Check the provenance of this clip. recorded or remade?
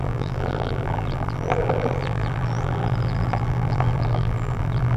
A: remade